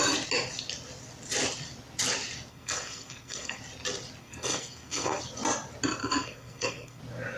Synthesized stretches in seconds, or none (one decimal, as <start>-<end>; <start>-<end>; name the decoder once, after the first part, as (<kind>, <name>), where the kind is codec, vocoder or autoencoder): 2.5-3.6 (codec, SNAC); 4.2-5.2; 6.0-7.0